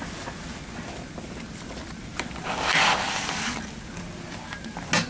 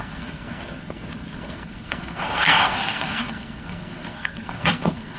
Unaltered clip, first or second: first